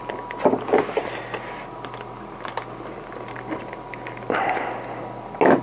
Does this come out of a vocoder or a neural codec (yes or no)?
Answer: no